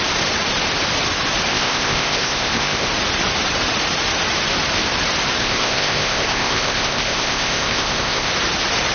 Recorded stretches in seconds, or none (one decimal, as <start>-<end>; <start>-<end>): 0.0-1.5; 2.9-5.4; 8.3-8.9